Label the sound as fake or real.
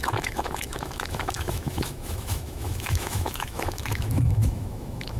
fake